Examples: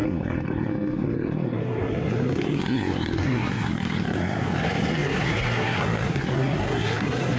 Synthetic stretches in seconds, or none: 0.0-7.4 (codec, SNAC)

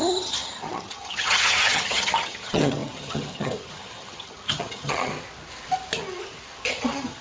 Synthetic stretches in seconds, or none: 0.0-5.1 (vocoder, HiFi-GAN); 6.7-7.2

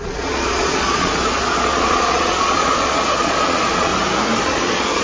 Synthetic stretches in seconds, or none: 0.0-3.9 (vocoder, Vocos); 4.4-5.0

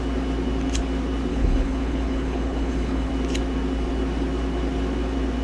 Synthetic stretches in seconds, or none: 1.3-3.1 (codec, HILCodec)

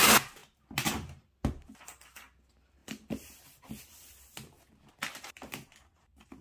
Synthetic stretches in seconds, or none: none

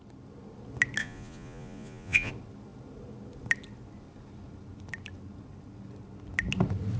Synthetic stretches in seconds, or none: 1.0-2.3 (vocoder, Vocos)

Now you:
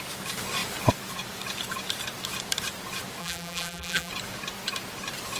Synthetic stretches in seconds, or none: 3.2-4.1 (vocoder, BigVGAN v2)